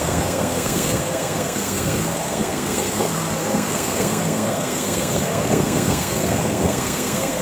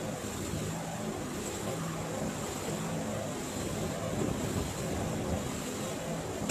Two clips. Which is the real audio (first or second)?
second